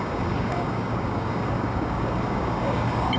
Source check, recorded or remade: remade